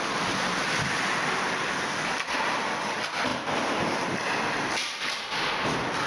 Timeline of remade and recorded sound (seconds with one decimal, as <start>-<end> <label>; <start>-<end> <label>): 0.0-6.1 recorded